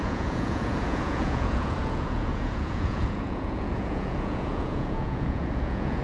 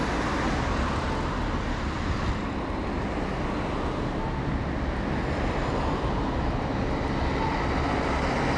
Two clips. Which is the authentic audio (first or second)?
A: second